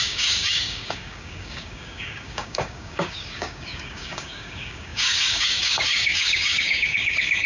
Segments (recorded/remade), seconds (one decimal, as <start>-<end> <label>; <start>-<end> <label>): 0.0-7.5 remade